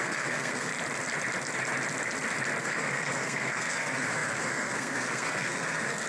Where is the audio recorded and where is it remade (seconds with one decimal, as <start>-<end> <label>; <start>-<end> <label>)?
0.0-0.7 remade; 0.7-2.6 recorded; 2.6-6.1 remade